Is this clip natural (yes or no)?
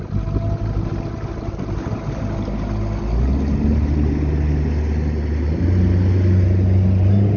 yes